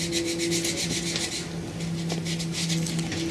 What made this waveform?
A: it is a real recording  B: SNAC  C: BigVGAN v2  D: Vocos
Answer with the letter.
A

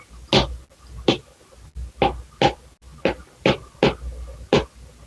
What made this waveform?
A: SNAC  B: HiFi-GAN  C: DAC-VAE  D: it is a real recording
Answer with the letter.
D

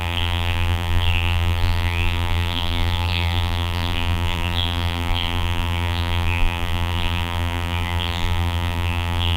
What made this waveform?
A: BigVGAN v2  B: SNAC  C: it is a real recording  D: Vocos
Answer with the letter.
A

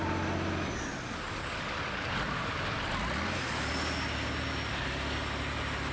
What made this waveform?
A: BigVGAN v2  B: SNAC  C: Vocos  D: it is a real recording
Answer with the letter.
D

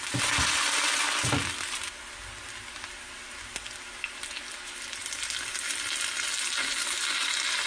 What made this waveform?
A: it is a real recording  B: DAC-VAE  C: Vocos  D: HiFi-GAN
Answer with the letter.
A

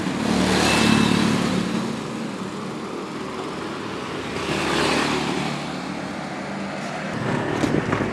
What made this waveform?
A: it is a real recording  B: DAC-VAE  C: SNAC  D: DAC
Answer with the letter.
A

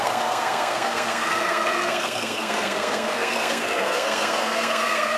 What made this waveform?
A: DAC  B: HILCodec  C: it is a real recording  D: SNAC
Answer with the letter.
D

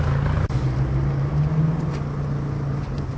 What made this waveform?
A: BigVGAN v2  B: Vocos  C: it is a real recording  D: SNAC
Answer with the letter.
C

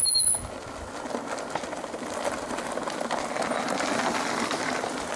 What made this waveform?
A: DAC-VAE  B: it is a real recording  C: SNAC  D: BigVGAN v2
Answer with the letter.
B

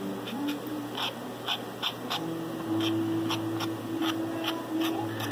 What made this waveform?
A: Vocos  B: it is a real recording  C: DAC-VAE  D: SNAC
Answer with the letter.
B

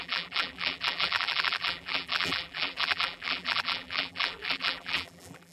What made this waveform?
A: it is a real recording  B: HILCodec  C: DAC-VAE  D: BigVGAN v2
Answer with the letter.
D